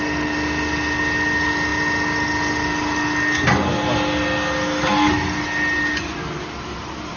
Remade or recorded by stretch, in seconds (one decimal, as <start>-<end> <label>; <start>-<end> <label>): 0.0-7.2 recorded

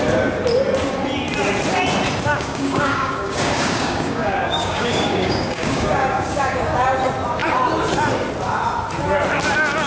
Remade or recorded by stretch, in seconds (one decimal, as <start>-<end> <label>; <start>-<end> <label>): 0.0-2.3 recorded; 2.3-6.7 remade; 6.7-9.9 recorded

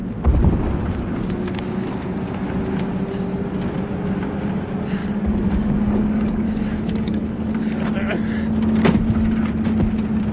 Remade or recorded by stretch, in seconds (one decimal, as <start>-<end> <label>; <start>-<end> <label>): 0.0-5.0 recorded; 5.0-7.9 remade; 7.9-10.3 recorded

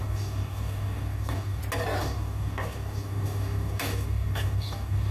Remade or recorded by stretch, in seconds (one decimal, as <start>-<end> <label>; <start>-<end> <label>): 0.0-1.6 remade; 1.6-2.0 recorded; 2.0-5.1 remade

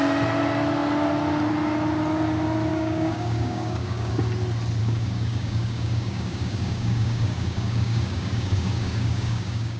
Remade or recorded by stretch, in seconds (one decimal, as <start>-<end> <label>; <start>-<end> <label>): 0.0-2.7 recorded; 2.7-4.1 remade; 4.1-4.8 recorded; 4.8-9.8 remade

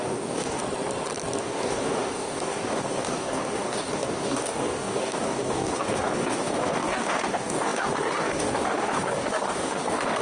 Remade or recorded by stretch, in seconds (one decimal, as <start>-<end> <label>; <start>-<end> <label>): 0.0-0.6 remade; 0.6-1.4 recorded; 1.4-10.2 remade

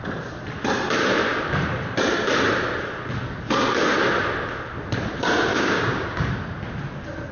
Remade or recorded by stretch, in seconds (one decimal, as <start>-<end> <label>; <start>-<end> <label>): 0.0-5.5 recorded; 5.5-6.3 remade; 6.3-7.3 recorded